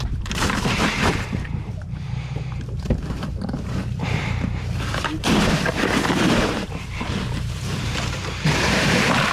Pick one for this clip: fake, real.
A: fake